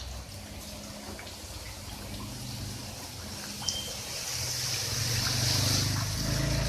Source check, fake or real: real